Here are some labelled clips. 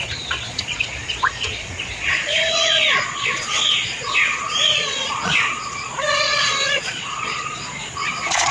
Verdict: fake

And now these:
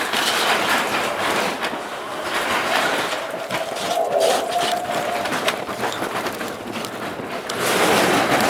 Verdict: fake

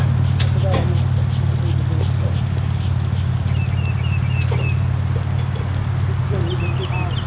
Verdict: real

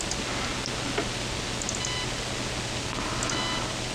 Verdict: real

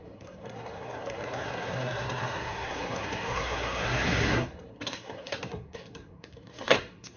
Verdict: fake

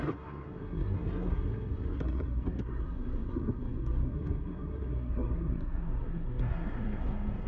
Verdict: fake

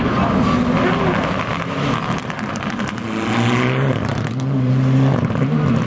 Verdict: real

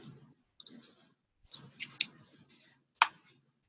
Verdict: real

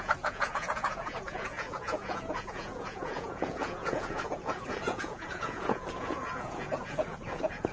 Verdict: fake